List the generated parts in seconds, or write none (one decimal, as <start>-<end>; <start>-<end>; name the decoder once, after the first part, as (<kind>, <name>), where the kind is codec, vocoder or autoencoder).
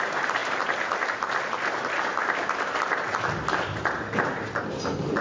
none